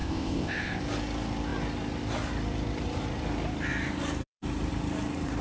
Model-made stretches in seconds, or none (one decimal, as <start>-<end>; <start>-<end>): 0.0-0.8